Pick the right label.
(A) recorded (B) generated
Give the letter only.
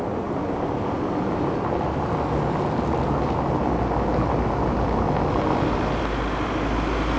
A